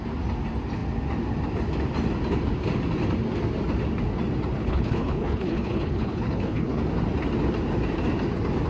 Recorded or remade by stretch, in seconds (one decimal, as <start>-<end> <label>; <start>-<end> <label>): 0.0-4.6 recorded; 4.6-6.8 remade; 6.8-8.7 recorded